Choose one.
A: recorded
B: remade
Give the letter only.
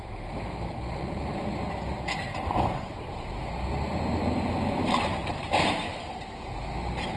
B